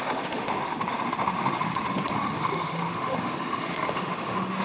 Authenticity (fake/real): fake